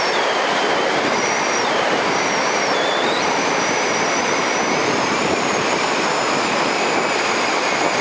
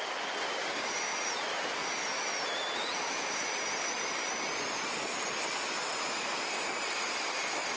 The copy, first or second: first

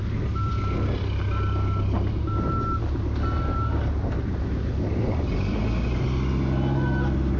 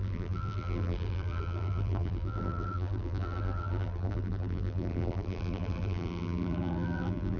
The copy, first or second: second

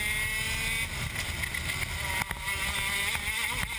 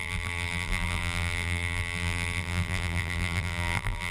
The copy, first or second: second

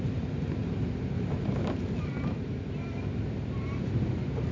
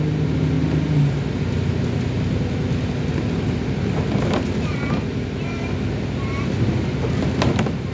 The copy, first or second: first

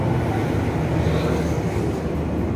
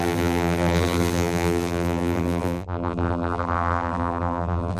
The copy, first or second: second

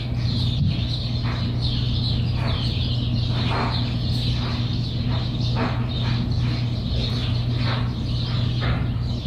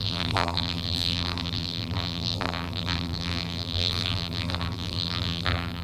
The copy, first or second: second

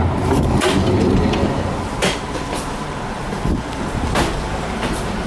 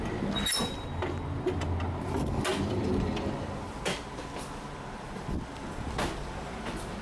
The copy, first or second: first